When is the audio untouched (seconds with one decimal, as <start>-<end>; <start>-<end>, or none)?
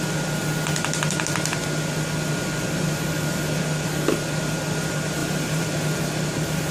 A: 0.0-5.2; 6.0-6.7